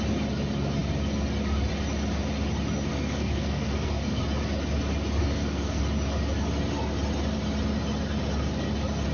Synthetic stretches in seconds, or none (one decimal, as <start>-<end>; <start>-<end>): 2.9-4.2; 5.2-5.8